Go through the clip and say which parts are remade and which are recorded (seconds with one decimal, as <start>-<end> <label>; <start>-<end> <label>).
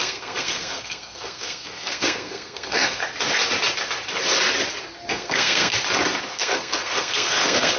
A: 0.0-3.0 remade; 3.0-5.1 recorded; 5.1-5.7 remade; 5.7-6.3 recorded; 6.3-7.8 remade